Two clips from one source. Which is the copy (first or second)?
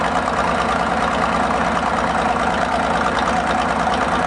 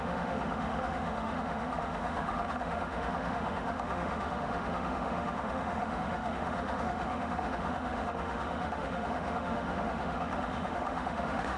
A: second